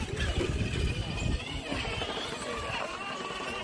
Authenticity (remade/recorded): recorded